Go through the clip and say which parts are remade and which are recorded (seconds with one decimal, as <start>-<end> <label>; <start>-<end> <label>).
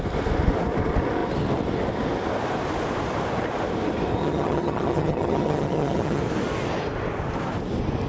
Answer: 0.0-4.2 recorded; 4.2-6.2 remade; 6.2-8.1 recorded